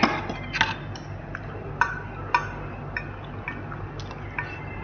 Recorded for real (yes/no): yes